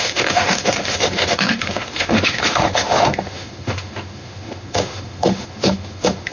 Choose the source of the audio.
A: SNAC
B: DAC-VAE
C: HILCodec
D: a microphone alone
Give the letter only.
B